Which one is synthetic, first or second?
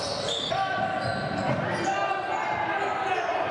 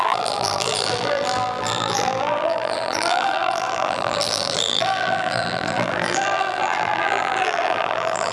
second